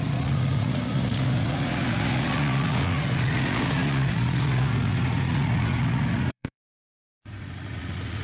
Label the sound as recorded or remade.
remade